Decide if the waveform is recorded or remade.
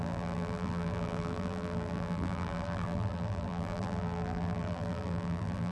remade